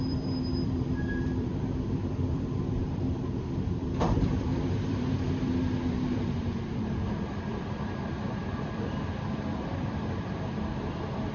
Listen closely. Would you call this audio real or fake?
fake